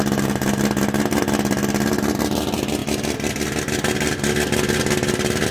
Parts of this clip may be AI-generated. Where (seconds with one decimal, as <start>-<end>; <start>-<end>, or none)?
none